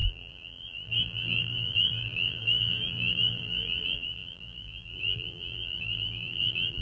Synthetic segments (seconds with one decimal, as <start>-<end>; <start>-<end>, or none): 0.0-6.8